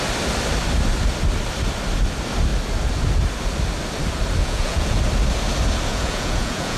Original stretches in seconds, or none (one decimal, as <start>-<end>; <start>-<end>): 0.0-4.4; 5.0-5.9

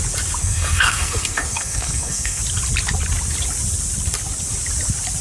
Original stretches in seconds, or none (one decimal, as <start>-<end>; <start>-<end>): 0.0-0.4; 2.4-5.2

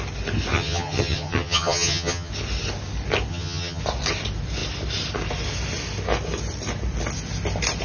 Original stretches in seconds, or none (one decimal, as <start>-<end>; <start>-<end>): 0.0-0.5; 2.3-3.3; 3.8-7.8

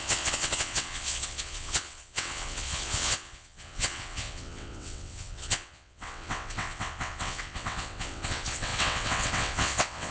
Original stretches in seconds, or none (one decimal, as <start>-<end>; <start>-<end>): none

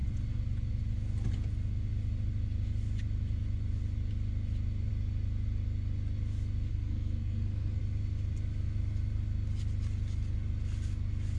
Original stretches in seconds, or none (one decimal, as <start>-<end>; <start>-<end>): 0.0-6.7; 7.8-11.4

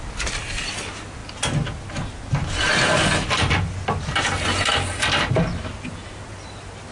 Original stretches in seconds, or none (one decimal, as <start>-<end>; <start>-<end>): 0.0-6.9

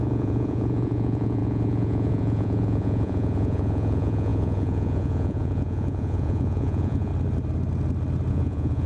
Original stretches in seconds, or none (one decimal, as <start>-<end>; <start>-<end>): 7.1-8.3